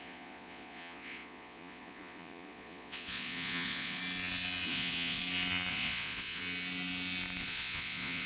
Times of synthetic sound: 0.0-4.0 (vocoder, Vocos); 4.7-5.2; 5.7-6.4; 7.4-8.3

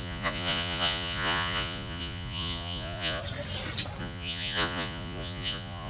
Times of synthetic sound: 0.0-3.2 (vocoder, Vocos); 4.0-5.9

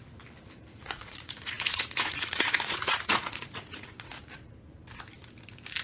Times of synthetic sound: 0.7-4.2 (vocoder, Vocos)

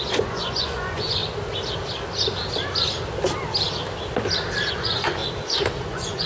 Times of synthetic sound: 0.0-1.2 (vocoder, Vocos); 4.7-5.2; 5.8-6.3

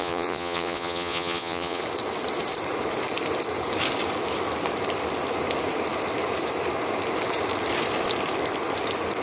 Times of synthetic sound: 0.0-1.8 (vocoder, Vocos)

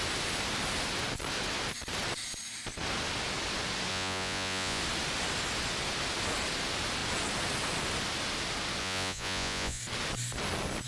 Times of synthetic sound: 3.9-4.8 (vocoder, Vocos); 8.8-9.8